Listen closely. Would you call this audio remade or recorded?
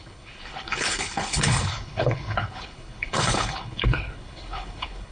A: remade